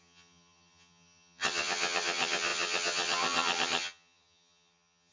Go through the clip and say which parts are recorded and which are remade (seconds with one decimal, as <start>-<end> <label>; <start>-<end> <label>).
0.0-5.1 remade